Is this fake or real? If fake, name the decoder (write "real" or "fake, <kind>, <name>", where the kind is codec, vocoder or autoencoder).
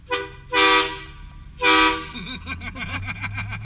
real